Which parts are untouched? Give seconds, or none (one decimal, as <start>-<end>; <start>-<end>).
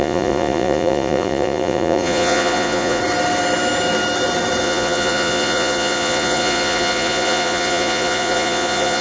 3.0-4.6